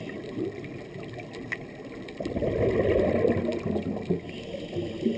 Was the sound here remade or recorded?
recorded